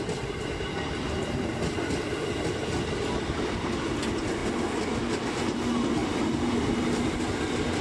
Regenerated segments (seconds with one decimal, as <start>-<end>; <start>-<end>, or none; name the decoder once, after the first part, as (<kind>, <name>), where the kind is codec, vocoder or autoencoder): none